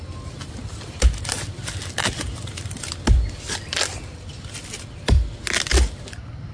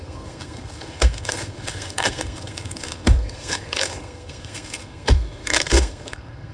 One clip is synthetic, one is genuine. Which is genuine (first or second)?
first